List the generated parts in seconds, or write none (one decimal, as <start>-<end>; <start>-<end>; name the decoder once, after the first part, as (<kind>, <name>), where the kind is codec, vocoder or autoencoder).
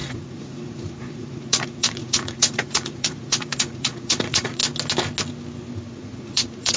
0.0-4.6 (vocoder, Vocos); 5.9-6.8